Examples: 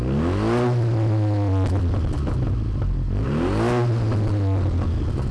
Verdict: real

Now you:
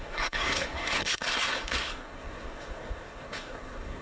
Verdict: fake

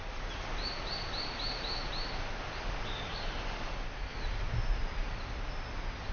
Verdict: real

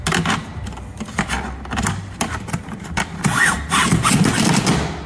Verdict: real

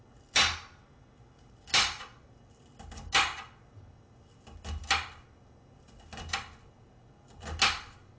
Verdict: real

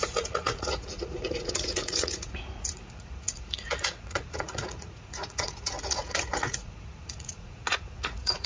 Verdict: fake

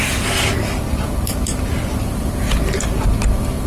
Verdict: real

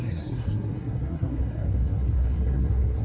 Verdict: fake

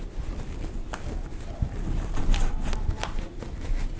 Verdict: real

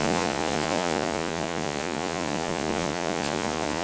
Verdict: fake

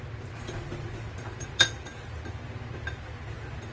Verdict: real